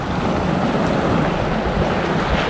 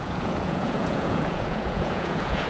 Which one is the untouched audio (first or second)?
first